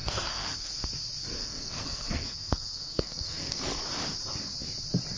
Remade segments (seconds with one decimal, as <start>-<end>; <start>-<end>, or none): 0.0-0.8; 1.4-3.8